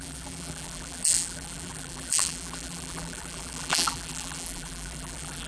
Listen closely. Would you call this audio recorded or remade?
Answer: remade